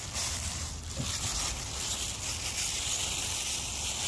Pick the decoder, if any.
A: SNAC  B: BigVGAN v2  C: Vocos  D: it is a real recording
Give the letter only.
B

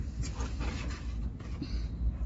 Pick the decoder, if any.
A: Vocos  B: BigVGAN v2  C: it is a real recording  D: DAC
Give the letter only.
C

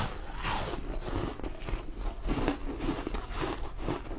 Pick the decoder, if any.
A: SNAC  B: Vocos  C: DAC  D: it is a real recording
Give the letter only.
D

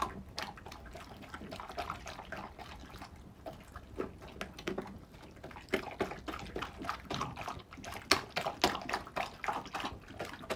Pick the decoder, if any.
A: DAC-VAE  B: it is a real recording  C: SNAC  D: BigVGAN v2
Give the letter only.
B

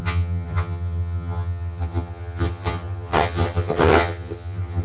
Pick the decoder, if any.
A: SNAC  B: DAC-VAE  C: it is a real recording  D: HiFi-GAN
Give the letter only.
D